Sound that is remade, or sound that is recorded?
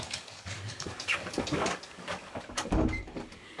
remade